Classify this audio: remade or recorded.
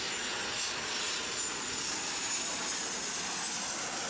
recorded